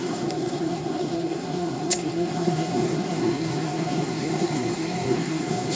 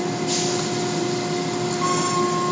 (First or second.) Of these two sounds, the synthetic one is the first